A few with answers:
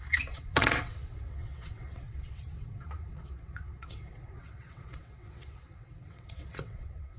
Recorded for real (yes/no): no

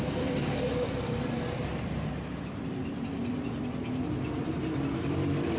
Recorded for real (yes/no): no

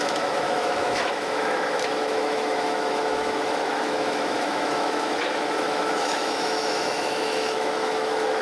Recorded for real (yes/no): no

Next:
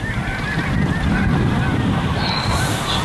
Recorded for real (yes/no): no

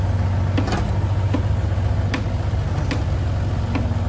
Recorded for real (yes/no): yes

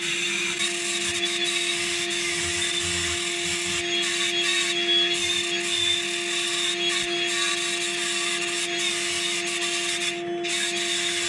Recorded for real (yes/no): yes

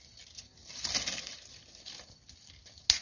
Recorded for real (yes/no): yes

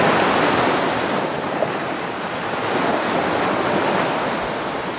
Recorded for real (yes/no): yes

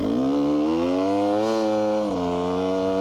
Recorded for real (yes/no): yes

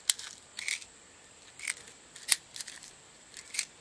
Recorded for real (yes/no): yes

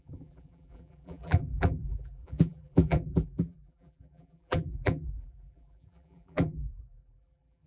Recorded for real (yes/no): no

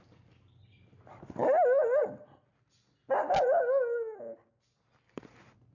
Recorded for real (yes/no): yes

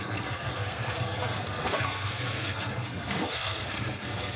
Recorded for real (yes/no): no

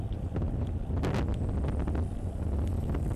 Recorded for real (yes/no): yes